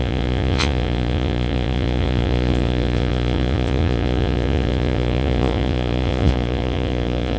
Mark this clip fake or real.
fake